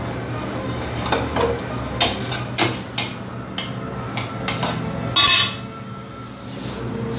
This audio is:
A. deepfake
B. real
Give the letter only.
B